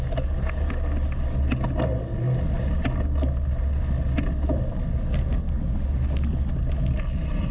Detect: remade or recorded recorded